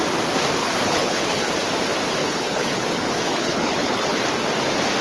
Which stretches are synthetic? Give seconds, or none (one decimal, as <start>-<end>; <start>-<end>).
0.6-1.5; 2.2-4.2